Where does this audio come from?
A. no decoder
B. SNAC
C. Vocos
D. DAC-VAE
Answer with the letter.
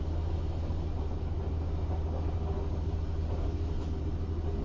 A